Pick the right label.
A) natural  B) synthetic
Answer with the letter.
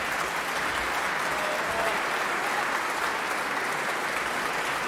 A